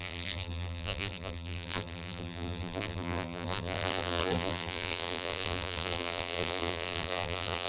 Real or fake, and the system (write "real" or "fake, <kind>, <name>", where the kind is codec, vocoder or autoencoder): fake, vocoder, BigVGAN v2